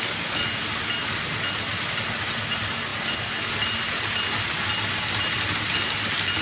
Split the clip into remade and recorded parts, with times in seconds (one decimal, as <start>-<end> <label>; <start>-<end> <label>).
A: 0.0-6.4 recorded

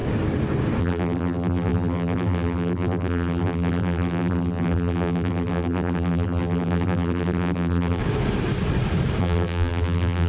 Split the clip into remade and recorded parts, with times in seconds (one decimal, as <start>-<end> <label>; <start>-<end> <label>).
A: 0.0-0.8 recorded; 0.8-8.0 remade; 8.0-9.2 recorded; 9.2-10.3 remade